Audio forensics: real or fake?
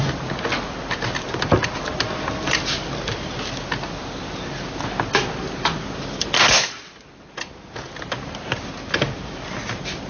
real